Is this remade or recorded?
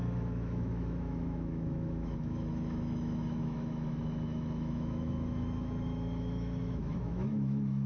remade